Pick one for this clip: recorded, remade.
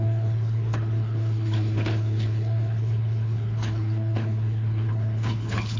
remade